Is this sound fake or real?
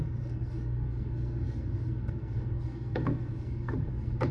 fake